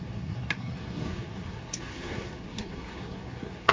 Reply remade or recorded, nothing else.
remade